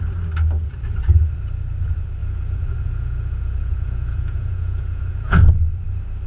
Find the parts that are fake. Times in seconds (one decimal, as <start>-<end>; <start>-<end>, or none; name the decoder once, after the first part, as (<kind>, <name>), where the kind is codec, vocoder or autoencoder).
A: 2.2-5.5 (vocoder, Vocos)